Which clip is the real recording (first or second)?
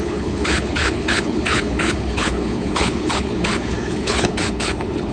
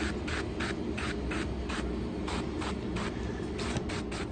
second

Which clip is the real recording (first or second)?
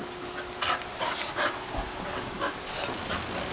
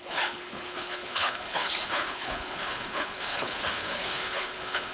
first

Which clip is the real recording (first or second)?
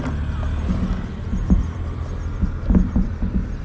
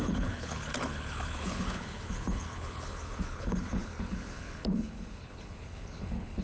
first